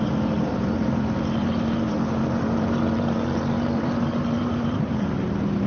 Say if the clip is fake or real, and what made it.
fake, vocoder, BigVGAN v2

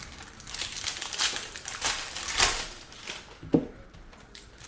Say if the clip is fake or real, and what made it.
fake, vocoder, BigVGAN v2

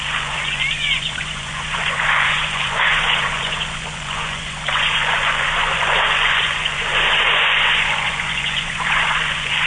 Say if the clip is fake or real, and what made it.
fake, vocoder, Vocos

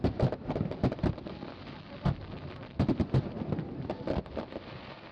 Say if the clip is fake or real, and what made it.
real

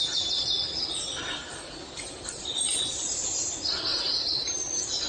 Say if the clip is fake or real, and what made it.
real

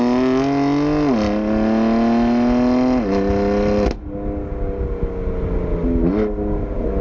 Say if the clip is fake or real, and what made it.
real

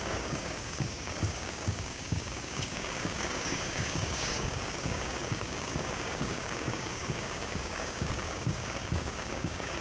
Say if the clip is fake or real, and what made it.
fake, codec, DAC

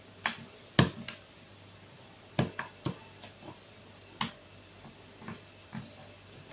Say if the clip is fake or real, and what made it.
real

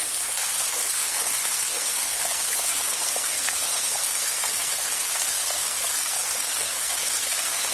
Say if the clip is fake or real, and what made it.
fake, codec, SNAC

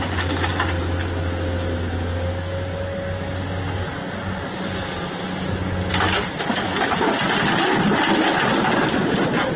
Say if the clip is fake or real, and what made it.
real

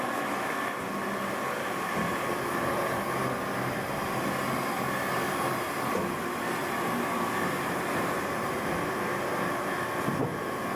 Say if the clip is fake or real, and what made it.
real